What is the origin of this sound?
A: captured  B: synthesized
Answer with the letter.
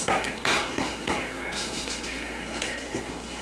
B